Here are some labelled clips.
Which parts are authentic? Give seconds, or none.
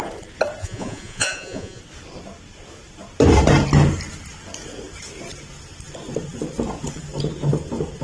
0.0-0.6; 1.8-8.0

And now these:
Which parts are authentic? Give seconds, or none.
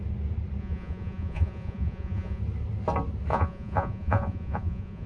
0.0-0.6; 2.4-3.3